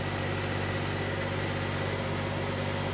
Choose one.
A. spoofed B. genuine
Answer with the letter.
B